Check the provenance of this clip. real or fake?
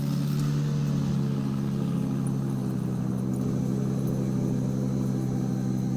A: real